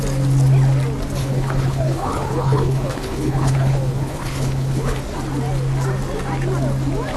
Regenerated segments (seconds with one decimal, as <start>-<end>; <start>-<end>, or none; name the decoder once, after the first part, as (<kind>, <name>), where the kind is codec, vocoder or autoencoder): 1.2-5.0 (codec, HILCodec)